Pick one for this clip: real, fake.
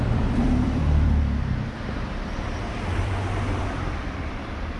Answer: fake